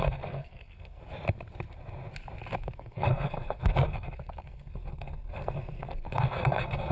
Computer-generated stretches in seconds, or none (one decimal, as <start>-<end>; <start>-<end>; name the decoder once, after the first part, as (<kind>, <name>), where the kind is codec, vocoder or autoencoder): 0.0-1.0 (codec, SNAC); 2.6-6.9